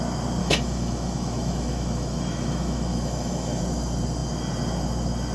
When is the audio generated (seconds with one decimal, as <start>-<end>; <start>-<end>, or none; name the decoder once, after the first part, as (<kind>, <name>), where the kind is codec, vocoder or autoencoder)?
0.4-3.6 (autoencoder, DAC-VAE)